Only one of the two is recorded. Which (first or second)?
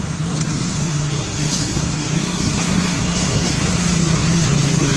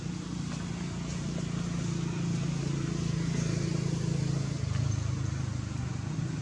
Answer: second